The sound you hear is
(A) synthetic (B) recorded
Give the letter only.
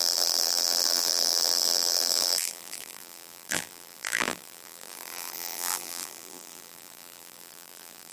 A